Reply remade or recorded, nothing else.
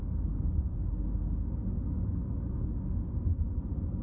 recorded